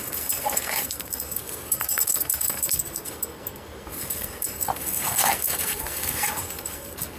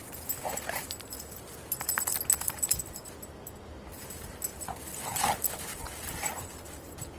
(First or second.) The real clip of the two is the second